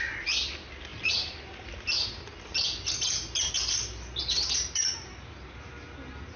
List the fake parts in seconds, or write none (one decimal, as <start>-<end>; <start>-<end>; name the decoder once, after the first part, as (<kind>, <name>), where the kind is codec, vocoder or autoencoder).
none